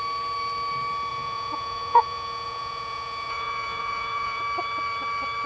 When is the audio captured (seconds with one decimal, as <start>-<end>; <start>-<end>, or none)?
0.0-1.1; 4.4-5.5